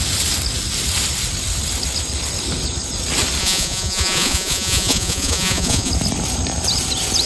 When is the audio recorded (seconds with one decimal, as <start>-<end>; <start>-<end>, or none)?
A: 0.0-3.4; 5.9-7.3